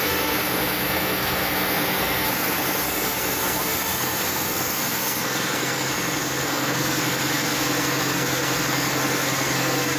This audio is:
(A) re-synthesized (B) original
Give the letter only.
A